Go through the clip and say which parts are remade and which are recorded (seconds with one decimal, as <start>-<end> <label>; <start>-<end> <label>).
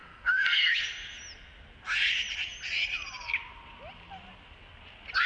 0.0-0.7 remade; 0.7-5.3 recorded